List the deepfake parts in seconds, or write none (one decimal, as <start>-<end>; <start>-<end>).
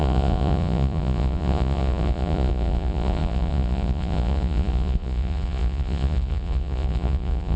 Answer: 0.0-7.6